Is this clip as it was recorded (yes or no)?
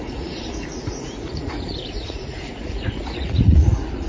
no